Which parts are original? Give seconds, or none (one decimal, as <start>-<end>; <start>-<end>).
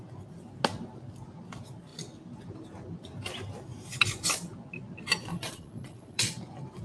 0.0-5.3; 6.3-6.8